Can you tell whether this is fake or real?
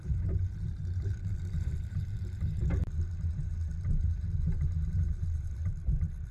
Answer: fake